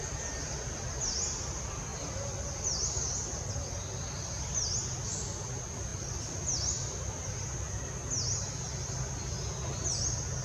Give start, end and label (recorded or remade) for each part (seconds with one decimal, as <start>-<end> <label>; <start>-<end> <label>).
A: 0.0-10.4 recorded

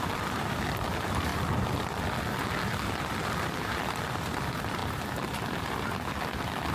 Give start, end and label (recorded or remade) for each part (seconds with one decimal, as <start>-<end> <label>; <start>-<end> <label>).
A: 0.0-1.3 remade; 1.3-3.0 recorded; 3.0-6.7 remade

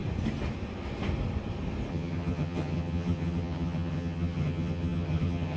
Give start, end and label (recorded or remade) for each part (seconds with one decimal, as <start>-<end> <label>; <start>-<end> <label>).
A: 0.0-1.9 recorded; 1.9-5.6 remade

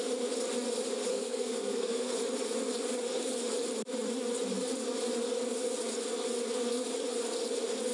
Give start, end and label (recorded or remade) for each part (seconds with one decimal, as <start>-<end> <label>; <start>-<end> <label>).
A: 0.0-1.1 recorded; 1.1-2.1 remade; 2.1-7.9 recorded

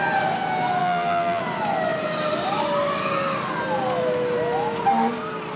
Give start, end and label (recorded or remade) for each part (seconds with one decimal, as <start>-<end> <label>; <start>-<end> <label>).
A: 0.0-0.8 recorded; 0.8-1.4 remade; 1.4-5.6 recorded